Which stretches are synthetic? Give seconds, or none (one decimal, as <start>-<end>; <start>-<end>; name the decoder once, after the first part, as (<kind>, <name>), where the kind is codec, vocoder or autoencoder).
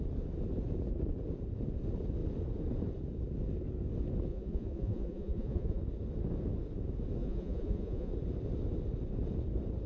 4.3-5.8 (vocoder, Vocos); 7.2-8.1